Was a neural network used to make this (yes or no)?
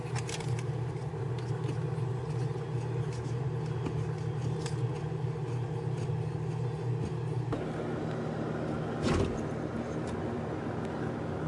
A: no